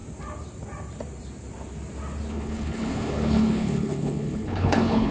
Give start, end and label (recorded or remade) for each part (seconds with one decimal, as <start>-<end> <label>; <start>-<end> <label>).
0.0-2.3 recorded; 2.3-5.1 remade